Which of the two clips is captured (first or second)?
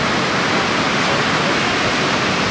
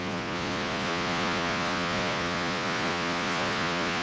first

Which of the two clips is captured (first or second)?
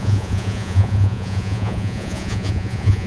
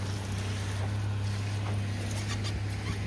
second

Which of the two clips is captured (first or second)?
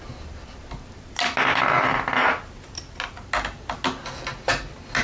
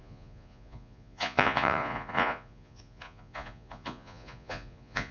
first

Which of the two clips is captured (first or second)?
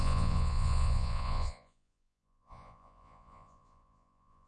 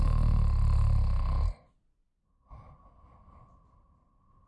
second